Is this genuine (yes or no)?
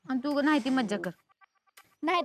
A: yes